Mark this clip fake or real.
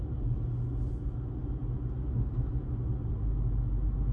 real